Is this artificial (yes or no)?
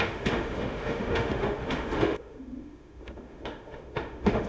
yes